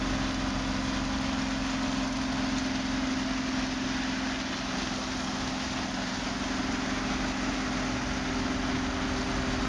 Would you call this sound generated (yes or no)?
no